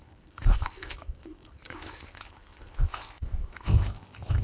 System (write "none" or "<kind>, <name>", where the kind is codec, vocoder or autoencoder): codec, ZipCodec